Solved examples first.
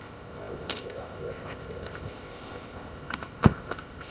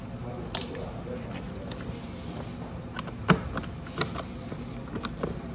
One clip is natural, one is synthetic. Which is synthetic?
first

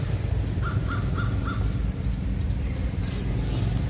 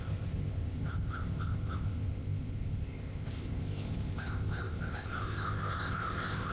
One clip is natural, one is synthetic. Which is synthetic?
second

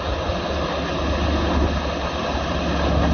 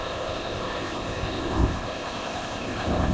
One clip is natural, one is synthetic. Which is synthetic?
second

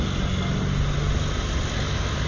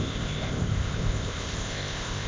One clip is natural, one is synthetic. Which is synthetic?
second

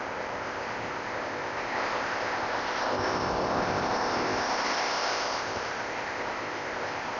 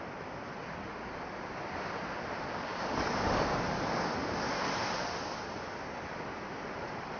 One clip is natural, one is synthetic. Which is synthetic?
first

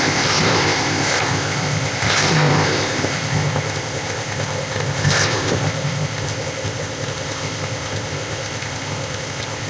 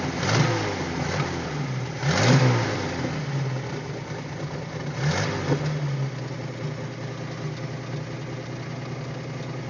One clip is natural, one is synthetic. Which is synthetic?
first